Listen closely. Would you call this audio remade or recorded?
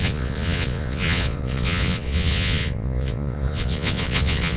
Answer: remade